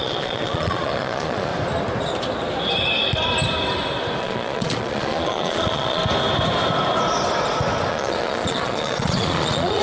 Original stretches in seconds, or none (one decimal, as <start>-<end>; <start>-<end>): 1.5-4.2; 6.0-7.9